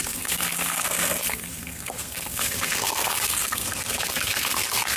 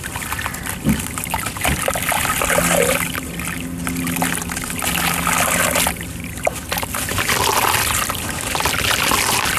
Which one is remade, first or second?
first